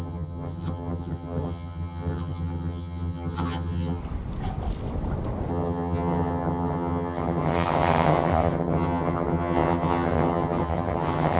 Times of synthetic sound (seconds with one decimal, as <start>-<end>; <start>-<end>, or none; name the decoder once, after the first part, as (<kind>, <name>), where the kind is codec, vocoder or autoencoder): 0.0-4.0 (vocoder, HiFi-GAN); 5.5-11.4